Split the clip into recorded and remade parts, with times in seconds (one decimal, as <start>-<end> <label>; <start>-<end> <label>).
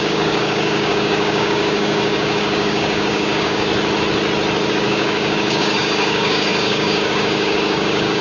0.0-3.7 remade; 3.7-4.7 recorded; 4.7-8.2 remade